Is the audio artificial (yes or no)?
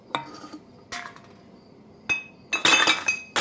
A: no